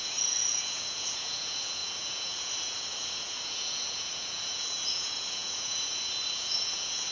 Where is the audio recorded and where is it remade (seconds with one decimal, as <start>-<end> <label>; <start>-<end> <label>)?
0.0-7.1 remade